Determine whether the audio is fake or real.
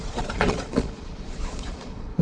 fake